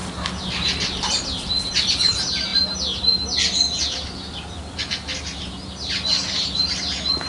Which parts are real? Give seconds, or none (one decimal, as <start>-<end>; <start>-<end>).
0.7-7.3